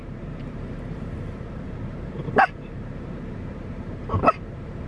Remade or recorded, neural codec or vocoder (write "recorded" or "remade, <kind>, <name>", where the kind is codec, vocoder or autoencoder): remade, vocoder, BigVGAN v2